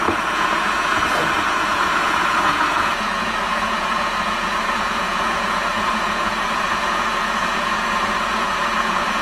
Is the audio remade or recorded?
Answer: remade